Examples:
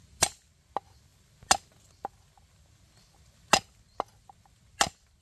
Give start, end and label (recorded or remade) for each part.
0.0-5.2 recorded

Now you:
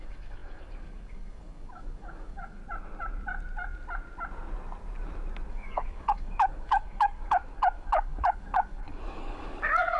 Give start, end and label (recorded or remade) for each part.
0.0-2.6 remade; 2.6-5.5 recorded; 5.5-10.0 remade

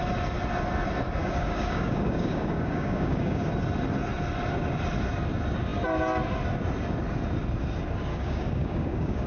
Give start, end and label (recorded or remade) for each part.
0.0-1.2 recorded; 1.2-3.5 remade; 3.5-8.1 recorded; 8.1-9.3 remade